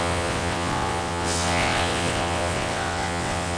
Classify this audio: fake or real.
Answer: fake